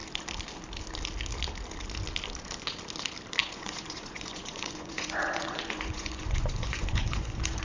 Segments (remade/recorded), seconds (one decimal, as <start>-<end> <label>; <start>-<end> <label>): 0.0-3.4 recorded; 3.4-7.6 remade